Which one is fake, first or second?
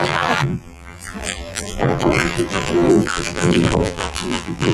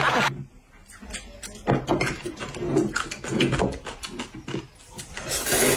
first